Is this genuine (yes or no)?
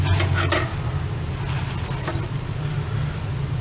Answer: yes